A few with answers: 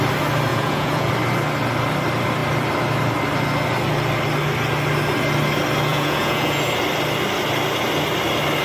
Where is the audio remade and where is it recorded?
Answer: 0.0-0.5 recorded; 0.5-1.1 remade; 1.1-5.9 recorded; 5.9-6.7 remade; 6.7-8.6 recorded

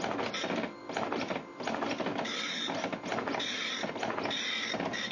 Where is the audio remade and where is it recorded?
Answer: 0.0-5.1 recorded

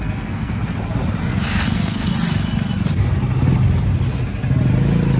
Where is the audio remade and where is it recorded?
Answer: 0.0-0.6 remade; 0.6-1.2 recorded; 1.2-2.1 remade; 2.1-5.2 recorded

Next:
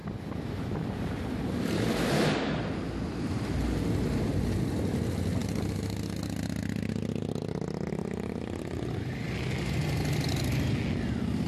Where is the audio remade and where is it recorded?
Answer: 0.0-11.5 recorded

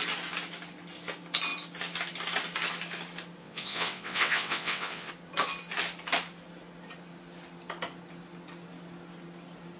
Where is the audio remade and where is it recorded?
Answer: 0.0-3.4 recorded; 3.4-5.1 remade; 5.1-9.8 recorded